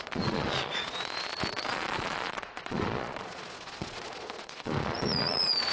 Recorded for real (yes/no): no